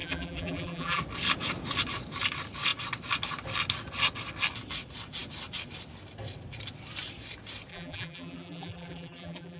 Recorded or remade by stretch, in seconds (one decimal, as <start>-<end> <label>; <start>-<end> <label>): 0.0-1.0 remade; 1.0-7.7 recorded; 7.7-9.6 remade